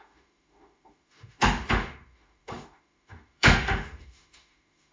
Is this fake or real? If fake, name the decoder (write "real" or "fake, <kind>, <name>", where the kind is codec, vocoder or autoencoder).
fake, autoencoder, DAC-VAE